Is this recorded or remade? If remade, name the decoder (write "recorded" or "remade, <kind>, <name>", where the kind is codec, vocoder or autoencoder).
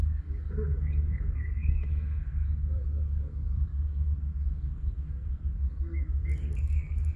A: remade, codec, SNAC